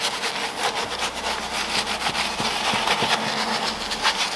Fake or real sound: real